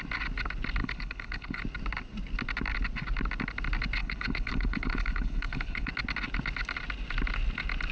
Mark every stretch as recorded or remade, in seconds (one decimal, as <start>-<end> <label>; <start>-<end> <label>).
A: 0.0-0.8 recorded; 0.8-1.6 remade; 1.6-4.0 recorded; 4.0-5.9 remade; 5.9-7.9 recorded